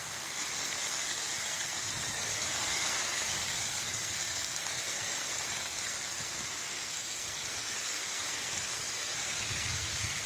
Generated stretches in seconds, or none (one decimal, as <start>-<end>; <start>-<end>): 0.0-10.3